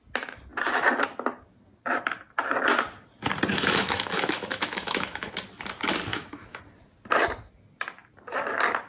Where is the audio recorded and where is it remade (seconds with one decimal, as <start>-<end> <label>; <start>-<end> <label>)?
0.0-3.5 recorded; 3.5-5.3 remade; 5.3-6.1 recorded; 6.1-6.6 remade; 6.6-8.9 recorded